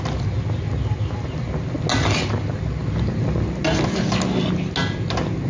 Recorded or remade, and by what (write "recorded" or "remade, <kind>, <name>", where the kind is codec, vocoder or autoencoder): recorded